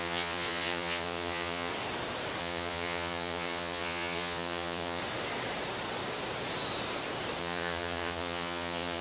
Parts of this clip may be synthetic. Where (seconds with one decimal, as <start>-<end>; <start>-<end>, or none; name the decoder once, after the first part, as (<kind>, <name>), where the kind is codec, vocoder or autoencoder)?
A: 0.0-1.7 (vocoder, Vocos); 2.4-5.0; 7.4-9.0